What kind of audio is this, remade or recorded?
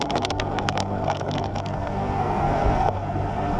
remade